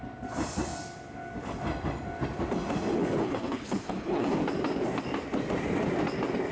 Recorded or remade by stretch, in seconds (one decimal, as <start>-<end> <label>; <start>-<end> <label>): 0.0-3.2 recorded; 3.2-4.4 remade; 4.4-6.5 recorded